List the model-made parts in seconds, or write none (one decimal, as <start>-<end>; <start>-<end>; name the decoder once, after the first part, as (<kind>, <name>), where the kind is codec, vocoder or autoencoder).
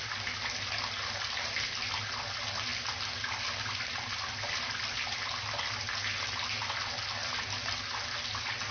none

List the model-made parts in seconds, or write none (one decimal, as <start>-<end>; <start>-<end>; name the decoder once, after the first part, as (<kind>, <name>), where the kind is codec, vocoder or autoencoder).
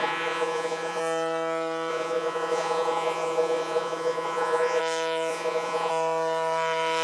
0.0-1.0 (vocoder, Vocos); 1.9-4.8; 5.3-5.9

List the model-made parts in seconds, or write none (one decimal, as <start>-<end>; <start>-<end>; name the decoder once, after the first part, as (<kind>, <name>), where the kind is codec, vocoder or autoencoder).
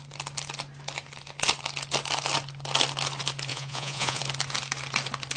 3.5-4.2 (vocoder, Vocos)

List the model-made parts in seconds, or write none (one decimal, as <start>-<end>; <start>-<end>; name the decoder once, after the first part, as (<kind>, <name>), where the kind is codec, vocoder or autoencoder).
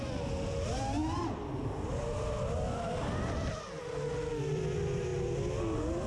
none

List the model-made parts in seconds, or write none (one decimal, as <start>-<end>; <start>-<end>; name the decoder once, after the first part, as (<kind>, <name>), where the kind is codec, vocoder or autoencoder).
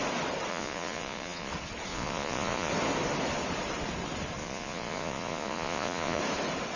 0.5-1.5 (vocoder, Vocos); 1.9-2.7; 4.4-6.2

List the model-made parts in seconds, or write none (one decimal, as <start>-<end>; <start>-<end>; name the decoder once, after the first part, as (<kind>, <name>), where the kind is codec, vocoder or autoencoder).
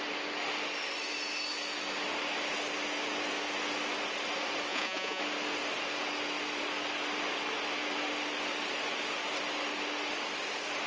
4.7-5.2 (vocoder, Vocos)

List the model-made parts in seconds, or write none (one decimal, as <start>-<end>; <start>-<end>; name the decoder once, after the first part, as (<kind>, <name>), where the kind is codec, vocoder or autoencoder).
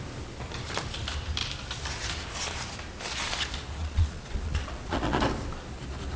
3.8-5.2 (vocoder, Vocos)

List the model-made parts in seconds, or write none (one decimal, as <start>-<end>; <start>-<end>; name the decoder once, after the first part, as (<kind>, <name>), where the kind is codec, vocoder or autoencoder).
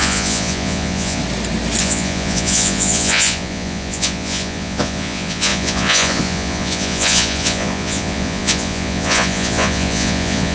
0.0-1.2 (vocoder, Vocos); 1.8-10.5